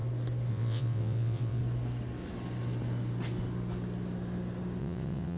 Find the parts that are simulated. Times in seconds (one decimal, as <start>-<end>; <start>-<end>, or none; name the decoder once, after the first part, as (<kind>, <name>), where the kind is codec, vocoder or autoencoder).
0.5-1.6 (vocoder, WaveNeXt); 4.8-5.4